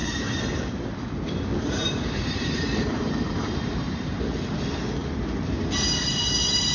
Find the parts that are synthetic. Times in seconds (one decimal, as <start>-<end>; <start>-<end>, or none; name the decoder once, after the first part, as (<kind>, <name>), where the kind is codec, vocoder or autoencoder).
0.0-4.0 (vocoder, BigVGAN v2); 5.0-5.6